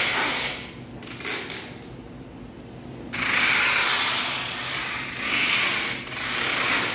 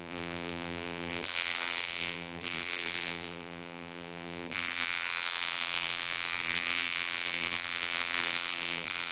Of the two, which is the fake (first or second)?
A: second